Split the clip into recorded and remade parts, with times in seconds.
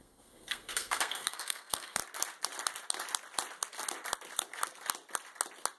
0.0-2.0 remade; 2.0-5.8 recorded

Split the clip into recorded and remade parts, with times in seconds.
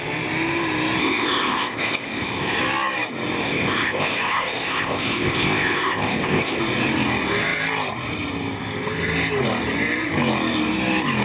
0.0-1.0 recorded; 1.0-2.6 remade; 2.6-3.4 recorded; 3.4-6.6 remade; 6.6-11.2 recorded